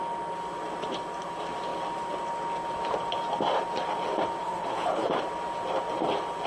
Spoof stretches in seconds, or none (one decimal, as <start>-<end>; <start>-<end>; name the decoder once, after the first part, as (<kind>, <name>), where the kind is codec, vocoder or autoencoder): 4.4-5.1 (codec, HILCodec)